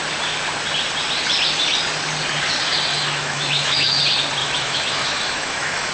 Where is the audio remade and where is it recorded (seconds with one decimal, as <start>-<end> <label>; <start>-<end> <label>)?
0.0-2.9 recorded; 2.9-4.0 remade; 4.0-4.4 recorded; 4.4-5.9 remade